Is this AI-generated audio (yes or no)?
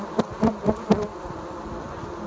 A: no